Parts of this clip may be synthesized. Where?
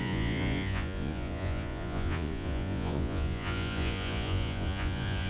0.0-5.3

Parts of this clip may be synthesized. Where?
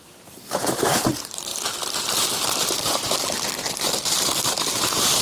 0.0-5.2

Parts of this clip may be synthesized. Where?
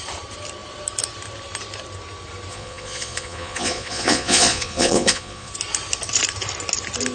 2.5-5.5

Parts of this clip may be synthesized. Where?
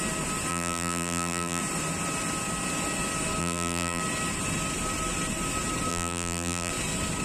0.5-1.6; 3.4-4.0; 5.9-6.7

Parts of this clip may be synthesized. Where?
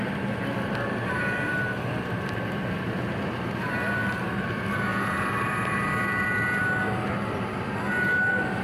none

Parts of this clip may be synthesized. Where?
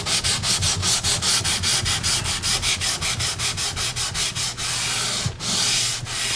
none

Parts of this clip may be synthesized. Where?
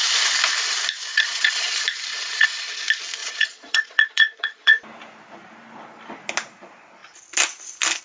1.1-1.7; 2.1-2.8; 3.2-4.8